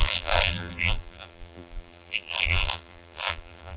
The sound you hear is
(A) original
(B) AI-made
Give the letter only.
B